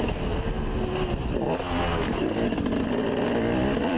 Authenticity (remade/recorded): recorded